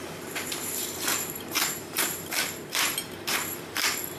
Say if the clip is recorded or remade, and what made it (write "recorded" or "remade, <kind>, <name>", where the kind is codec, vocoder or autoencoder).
remade, vocoder, BigVGAN v2